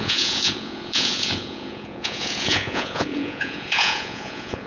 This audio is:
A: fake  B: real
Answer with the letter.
A